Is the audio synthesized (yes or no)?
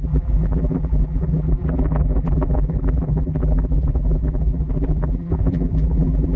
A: yes